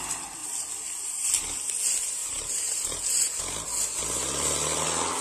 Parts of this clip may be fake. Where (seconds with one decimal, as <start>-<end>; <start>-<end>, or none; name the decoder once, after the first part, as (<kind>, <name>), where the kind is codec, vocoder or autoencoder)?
2.2-3.4 (vocoder, BigVGAN v2)